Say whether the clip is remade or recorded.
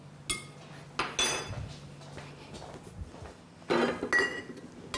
recorded